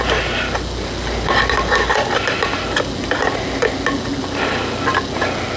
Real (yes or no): yes